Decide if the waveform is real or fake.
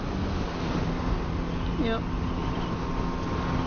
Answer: real